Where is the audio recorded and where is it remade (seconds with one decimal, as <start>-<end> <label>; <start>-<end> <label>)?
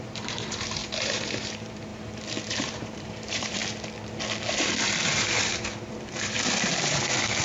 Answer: 0.0-1.9 remade; 1.9-2.4 recorded; 2.4-3.6 remade; 3.6-4.5 recorded; 4.5-7.4 remade